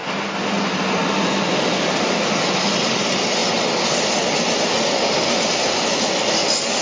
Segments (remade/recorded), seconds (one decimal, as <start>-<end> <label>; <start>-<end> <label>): 0.0-6.8 recorded

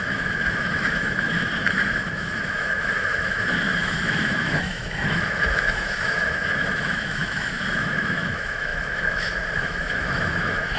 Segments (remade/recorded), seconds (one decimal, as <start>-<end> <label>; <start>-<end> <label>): 0.0-10.8 remade

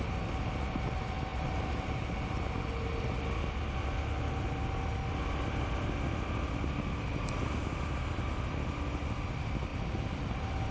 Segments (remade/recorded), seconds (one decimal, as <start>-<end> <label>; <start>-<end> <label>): 0.0-10.7 recorded